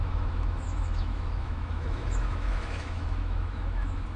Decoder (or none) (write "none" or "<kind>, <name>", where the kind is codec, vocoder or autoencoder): autoencoder, DAC-VAE